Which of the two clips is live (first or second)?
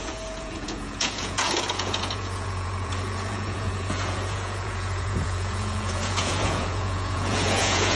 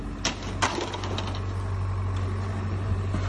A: second